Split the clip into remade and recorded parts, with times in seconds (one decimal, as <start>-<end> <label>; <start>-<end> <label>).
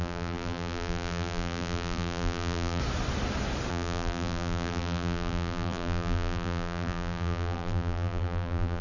0.0-2.8 remade; 2.8-3.7 recorded; 3.7-8.8 remade